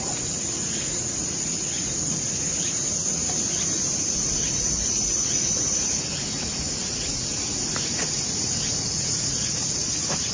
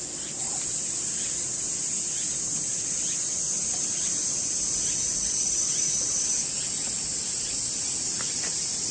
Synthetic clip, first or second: first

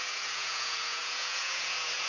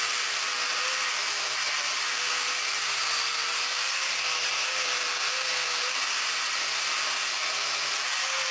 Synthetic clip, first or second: first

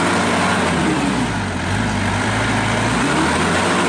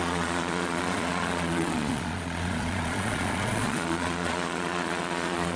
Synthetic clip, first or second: second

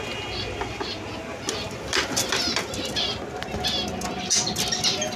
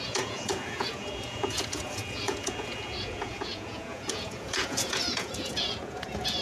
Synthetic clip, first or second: second